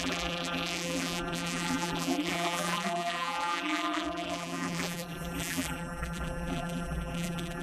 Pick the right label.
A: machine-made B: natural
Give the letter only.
A